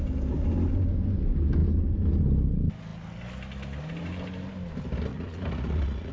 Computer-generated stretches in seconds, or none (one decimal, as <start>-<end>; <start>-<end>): 5.1-6.1